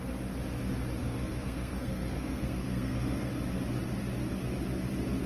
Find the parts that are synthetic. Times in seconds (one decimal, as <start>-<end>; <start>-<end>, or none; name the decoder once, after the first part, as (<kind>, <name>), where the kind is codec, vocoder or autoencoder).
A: 1.0-3.3 (codec, SNAC)